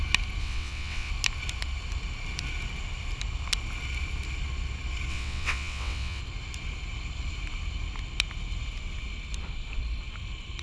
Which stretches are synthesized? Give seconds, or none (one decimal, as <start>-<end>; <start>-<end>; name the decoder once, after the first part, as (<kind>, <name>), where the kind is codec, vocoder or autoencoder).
0.4-1.1 (vocoder, WaveNeXt); 5.1-6.2